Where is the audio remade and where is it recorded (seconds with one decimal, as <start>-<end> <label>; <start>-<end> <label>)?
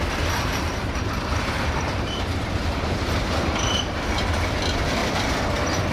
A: 0.0-0.5 recorded; 0.5-4.0 remade; 4.0-5.9 recorded